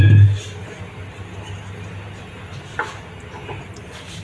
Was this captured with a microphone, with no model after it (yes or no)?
yes